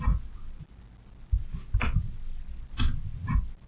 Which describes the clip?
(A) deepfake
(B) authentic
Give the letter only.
B